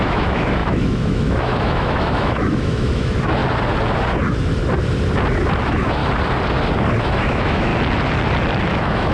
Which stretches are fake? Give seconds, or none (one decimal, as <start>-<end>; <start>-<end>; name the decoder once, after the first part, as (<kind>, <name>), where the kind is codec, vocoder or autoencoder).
0.0-3.4 (autoencoder, DAC-VAE); 5.6-6.0; 7.0-7.7; 8.6-9.1